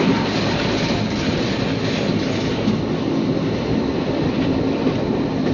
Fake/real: real